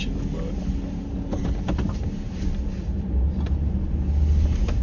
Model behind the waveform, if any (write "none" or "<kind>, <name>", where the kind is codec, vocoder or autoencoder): none